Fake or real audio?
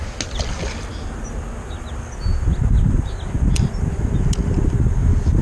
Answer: real